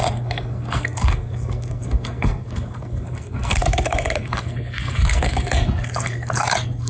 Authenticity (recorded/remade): remade